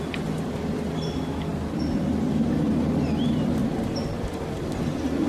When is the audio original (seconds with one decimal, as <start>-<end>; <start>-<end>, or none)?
0.0-5.3